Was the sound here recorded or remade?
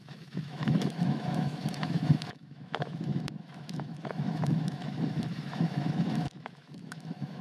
remade